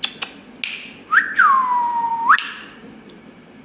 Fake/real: real